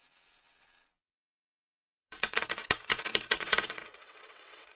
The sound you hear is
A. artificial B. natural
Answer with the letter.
A